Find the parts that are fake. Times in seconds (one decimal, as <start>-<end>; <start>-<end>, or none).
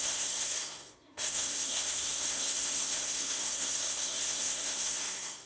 0.0-5.5